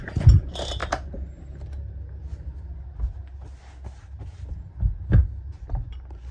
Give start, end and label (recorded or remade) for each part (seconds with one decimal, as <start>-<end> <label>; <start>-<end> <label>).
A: 0.0-5.2 recorded; 5.2-6.3 remade